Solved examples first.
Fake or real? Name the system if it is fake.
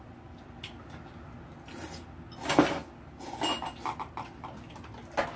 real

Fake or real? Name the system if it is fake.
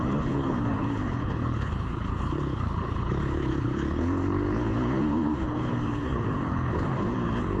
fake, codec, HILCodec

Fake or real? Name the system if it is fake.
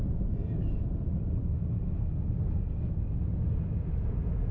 real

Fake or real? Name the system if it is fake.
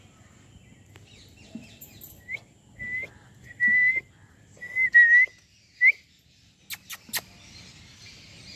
real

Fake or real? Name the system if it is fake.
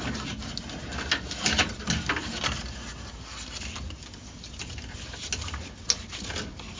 real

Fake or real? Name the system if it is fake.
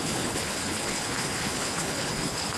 fake, codec, HILCodec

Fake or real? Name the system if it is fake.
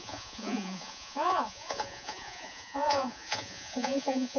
fake, vocoder, Vocos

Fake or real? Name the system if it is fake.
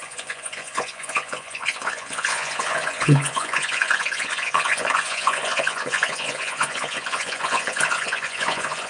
fake, vocoder, Vocos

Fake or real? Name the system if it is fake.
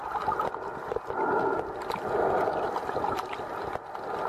real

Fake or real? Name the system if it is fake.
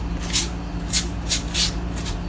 real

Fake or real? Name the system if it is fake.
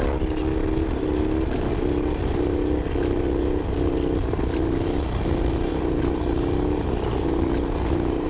real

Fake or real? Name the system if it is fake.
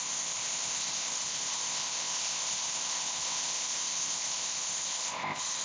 fake, codec, ZipCodec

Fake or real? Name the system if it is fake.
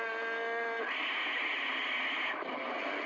real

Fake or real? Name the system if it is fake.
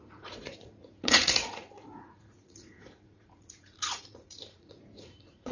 fake, vocoder, Vocos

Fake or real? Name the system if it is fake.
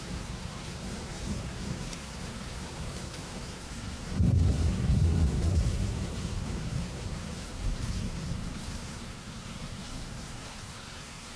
fake, codec, SNAC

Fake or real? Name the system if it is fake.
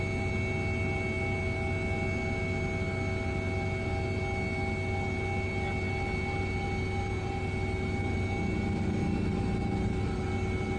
real